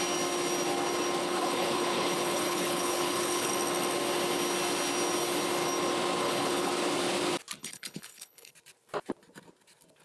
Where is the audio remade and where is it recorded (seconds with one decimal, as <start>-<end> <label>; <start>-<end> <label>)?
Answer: 0.0-1.2 recorded; 1.2-3.5 remade; 3.5-6.2 recorded; 6.2-6.7 remade; 6.7-7.6 recorded; 7.6-8.5 remade; 8.5-10.0 recorded

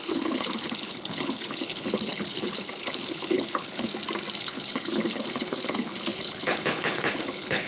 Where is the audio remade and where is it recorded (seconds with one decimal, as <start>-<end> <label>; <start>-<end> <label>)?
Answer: 0.0-3.9 remade; 3.9-4.4 recorded; 4.4-7.7 remade

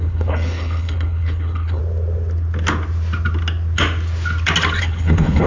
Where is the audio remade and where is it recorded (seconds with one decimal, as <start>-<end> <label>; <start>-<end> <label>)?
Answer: 0.0-1.8 remade; 1.8-4.8 recorded; 4.8-5.5 remade